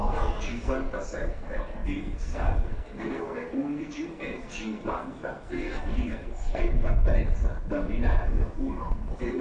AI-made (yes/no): yes